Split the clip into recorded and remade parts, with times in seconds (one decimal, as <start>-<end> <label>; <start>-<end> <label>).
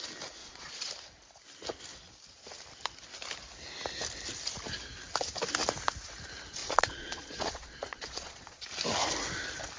0.0-0.4 recorded; 0.4-0.9 remade; 0.9-6.6 recorded; 6.6-8.6 remade; 8.6-9.8 recorded